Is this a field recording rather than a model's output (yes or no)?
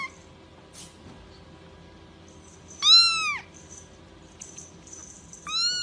yes